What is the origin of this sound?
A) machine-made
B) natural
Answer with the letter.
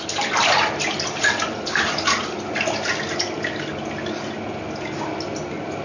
B